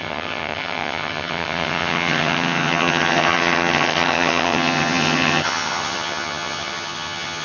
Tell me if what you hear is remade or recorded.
remade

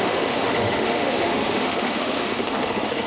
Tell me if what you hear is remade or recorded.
remade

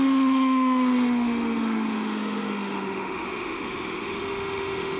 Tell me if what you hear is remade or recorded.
remade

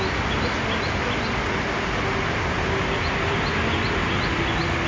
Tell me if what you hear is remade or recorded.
recorded